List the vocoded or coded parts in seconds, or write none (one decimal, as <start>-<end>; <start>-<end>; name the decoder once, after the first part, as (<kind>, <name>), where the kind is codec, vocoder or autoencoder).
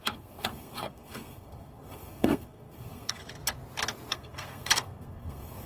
0.0-3.2 (codec, SNAC); 4.1-5.7